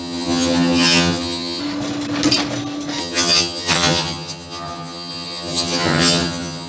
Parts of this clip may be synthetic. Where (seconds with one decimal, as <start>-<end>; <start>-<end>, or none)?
0.0-1.6; 3.0-6.7

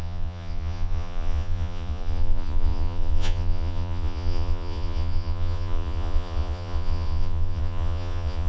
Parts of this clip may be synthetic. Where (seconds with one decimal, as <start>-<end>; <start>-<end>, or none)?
0.0-8.5